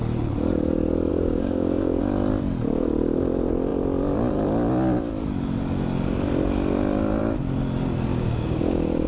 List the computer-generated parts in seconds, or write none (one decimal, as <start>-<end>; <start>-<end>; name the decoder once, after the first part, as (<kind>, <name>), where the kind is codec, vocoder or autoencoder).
1.1-2.0 (codec, DAC); 8.1-9.1